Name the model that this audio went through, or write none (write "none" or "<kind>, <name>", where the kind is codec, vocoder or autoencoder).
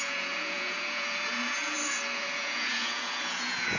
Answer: vocoder, Vocos